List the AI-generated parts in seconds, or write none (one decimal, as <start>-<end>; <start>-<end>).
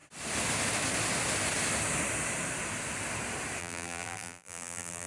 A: 3.6-5.1